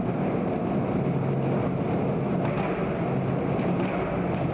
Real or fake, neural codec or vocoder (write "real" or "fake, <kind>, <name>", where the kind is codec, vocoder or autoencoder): real